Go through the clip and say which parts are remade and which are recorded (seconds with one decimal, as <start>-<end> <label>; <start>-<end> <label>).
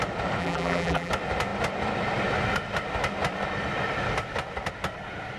0.0-0.4 recorded; 0.4-1.1 remade; 1.1-5.4 recorded